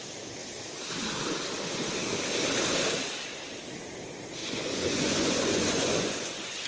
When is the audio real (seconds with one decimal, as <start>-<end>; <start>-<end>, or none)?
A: 0.0-4.4